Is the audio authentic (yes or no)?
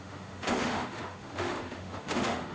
no